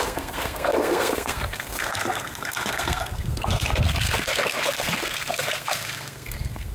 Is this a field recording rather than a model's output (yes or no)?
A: no